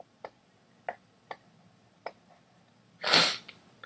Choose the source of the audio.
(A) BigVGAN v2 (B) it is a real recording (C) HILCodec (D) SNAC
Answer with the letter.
B